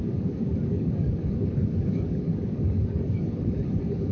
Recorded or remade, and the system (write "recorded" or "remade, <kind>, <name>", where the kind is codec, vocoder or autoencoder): remade, codec, DAC